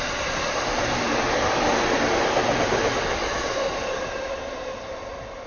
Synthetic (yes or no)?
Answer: no